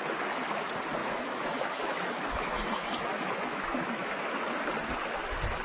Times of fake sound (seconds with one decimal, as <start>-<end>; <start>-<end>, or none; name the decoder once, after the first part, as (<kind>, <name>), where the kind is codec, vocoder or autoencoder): 1.0-4.2 (autoencoder, DAC-VAE)